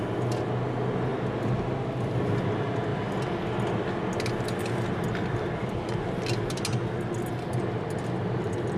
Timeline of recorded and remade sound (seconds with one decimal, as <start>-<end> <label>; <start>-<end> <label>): 0.0-8.8 recorded